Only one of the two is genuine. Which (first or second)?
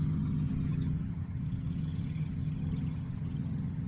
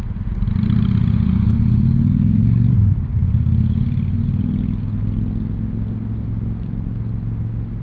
second